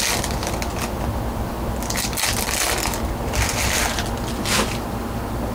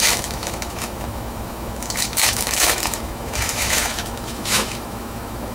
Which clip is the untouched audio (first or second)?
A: first